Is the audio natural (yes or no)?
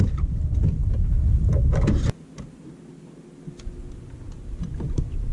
yes